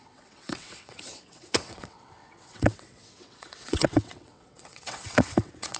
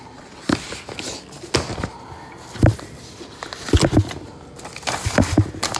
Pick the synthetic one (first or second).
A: first